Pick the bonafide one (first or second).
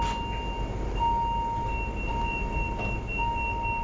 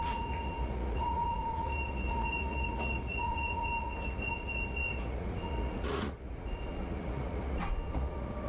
first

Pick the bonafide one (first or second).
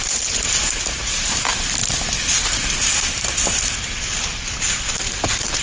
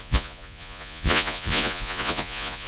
first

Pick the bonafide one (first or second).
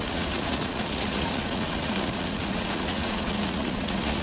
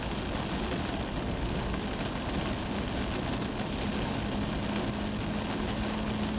second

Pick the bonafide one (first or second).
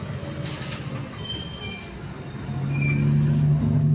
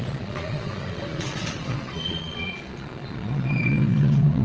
first